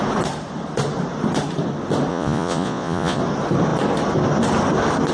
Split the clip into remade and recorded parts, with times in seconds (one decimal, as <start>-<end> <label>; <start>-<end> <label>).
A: 0.0-2.1 recorded; 2.1-3.2 remade; 3.2-5.1 recorded